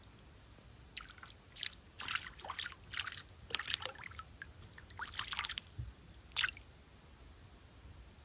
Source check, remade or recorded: recorded